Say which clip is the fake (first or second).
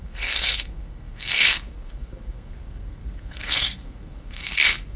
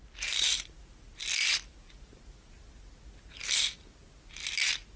first